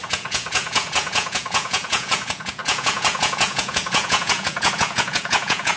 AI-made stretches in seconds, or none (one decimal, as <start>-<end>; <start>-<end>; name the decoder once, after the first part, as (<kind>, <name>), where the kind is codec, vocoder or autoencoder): 0.0-5.8 (vocoder, Vocos)